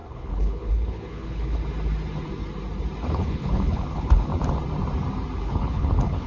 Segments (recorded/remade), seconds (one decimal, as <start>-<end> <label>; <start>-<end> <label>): 0.0-1.6 remade; 1.6-3.1 recorded; 3.1-4.3 remade; 4.3-5.4 recorded; 5.4-6.3 remade